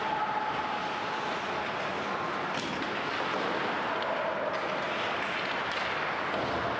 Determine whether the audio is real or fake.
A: real